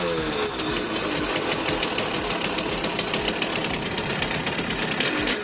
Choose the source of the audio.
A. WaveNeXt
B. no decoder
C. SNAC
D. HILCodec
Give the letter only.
B